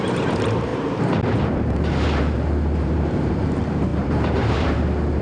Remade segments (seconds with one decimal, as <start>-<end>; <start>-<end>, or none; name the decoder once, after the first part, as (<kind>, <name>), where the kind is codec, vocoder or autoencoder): 0.0-5.2 (vocoder, BigVGAN v2)